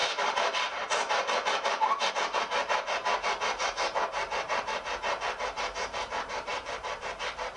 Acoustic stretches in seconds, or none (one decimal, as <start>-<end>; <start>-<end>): none